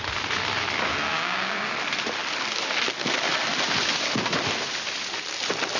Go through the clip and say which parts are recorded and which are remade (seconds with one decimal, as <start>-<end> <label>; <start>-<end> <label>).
0.0-1.1 recorded; 1.1-1.7 remade; 1.7-5.8 recorded